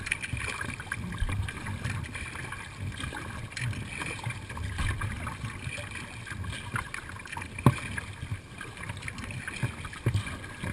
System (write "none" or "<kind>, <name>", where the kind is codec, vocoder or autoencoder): none